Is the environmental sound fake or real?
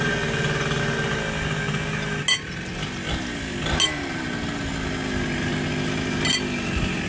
real